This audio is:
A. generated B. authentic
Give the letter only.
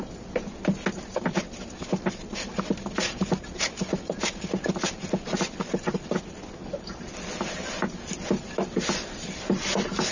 B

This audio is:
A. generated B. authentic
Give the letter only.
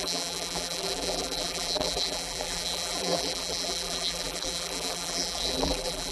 A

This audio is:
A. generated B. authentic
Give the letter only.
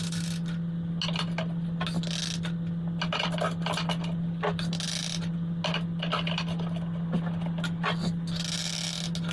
B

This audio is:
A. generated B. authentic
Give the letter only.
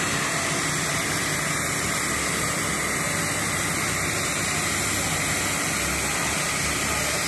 A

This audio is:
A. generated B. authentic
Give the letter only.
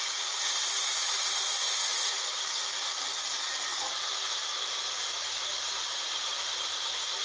A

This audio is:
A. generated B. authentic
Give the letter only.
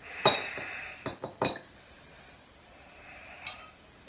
B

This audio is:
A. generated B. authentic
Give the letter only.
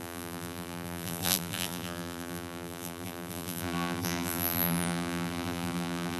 A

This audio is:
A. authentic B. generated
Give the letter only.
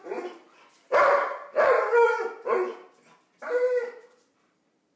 B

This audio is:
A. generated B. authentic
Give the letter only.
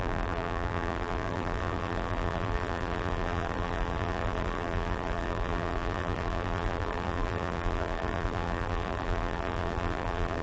A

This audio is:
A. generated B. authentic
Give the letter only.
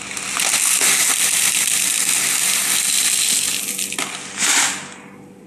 B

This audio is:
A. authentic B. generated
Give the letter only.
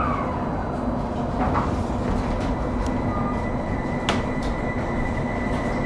A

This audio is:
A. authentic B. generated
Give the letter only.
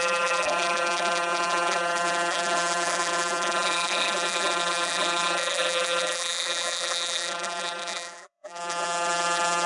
B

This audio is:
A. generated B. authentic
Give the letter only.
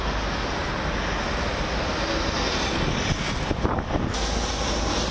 B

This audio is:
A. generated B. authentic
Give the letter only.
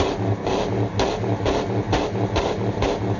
B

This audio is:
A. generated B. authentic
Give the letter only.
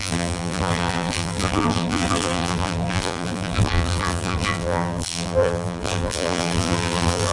A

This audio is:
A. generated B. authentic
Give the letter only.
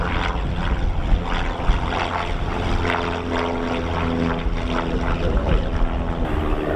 B